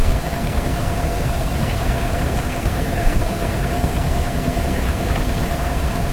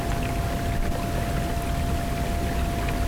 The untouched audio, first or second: second